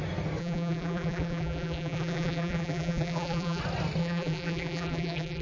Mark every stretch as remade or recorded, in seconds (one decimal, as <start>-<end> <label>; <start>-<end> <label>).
0.0-0.4 recorded; 0.4-3.6 remade; 3.6-4.0 recorded; 4.0-5.4 remade